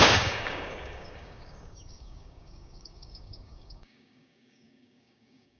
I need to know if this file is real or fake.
fake